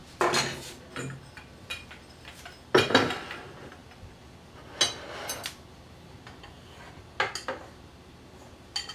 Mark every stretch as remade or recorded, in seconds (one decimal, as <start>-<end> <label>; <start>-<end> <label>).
0.0-8.9 recorded